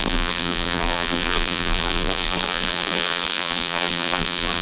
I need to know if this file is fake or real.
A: fake